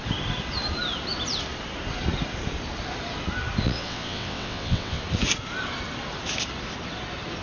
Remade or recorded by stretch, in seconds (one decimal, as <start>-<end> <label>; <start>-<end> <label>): 0.0-3.6 recorded; 3.6-5.0 remade; 5.0-7.4 recorded